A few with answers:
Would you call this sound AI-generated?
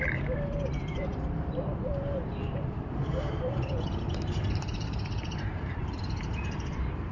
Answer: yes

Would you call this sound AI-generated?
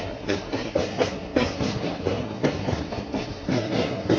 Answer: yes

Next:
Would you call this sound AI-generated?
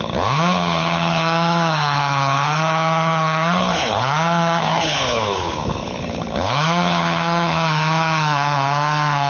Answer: yes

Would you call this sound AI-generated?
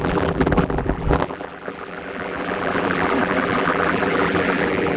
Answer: yes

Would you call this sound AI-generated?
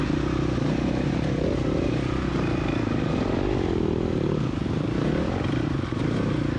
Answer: no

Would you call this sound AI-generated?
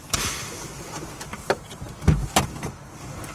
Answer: no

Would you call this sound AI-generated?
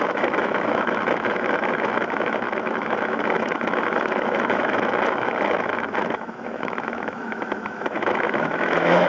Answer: yes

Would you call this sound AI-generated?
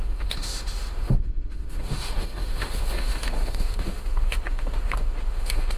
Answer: yes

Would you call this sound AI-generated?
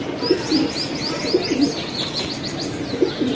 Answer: no